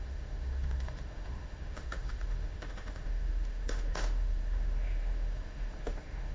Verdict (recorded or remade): remade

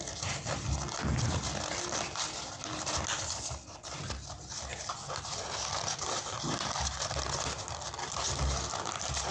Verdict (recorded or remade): remade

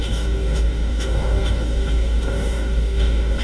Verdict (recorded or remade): remade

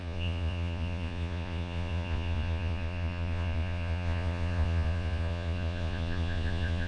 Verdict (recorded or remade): remade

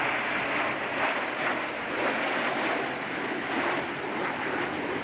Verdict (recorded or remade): recorded